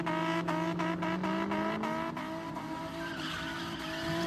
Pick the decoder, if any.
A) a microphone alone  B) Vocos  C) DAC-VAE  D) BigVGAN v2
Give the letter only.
A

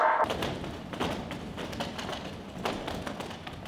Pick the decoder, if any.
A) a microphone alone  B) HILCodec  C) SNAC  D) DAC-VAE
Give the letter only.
A